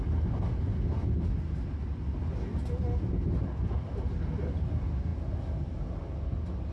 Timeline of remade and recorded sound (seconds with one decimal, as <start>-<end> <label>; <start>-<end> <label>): 0.0-6.7 recorded